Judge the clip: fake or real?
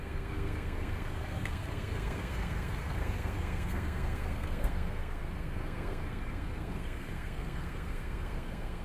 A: fake